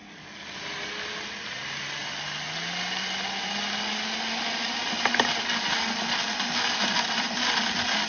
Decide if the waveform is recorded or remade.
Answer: recorded